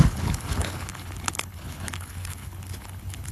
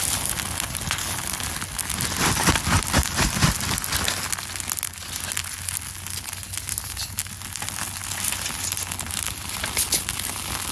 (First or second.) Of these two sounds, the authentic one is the second